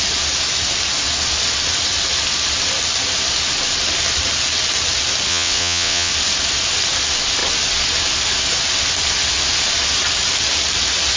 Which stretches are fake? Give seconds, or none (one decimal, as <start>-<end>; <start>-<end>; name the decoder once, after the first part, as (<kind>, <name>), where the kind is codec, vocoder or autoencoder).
5.3-6.1 (vocoder, WaveNeXt)